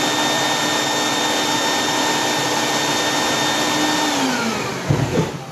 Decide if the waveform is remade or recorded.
recorded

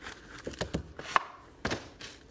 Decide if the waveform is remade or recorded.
recorded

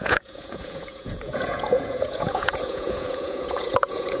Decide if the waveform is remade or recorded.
remade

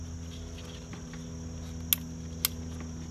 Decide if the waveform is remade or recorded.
recorded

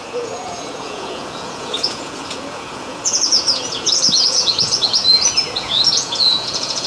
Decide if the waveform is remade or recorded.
remade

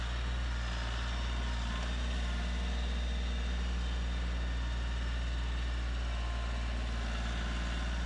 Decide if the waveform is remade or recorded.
recorded